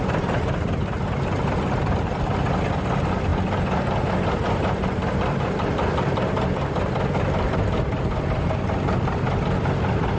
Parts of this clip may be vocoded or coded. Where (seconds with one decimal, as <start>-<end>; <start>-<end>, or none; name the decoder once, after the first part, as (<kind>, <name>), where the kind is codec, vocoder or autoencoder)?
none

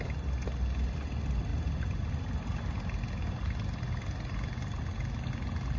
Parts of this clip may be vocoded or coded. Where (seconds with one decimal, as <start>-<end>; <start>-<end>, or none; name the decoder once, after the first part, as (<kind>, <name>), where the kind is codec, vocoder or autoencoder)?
none

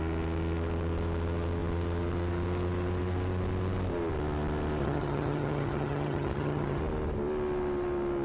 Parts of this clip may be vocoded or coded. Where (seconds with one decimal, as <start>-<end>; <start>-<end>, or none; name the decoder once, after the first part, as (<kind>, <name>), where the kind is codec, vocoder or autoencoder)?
4.8-6.8 (vocoder, HiFi-GAN)

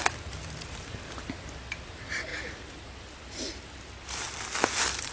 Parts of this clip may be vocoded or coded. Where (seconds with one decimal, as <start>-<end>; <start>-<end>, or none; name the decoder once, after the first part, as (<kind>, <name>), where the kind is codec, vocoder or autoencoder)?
none